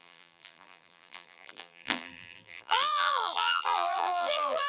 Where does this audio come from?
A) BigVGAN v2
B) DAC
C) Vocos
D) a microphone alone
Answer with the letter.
A